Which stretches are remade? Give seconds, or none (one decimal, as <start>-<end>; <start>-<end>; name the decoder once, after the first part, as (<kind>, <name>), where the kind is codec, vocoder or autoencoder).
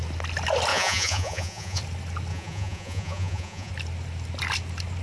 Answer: 0.7-1.8 (vocoder, Vocos); 2.3-3.7